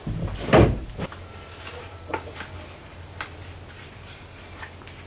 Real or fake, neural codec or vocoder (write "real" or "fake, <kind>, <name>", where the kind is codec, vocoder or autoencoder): real